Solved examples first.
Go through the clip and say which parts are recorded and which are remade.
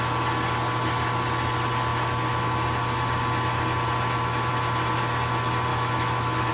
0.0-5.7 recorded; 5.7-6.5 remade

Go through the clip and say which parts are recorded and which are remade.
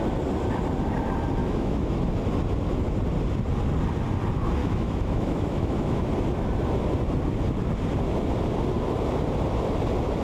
0.0-1.4 recorded; 1.4-2.1 remade; 2.1-4.6 recorded; 4.6-6.1 remade; 6.1-10.2 recorded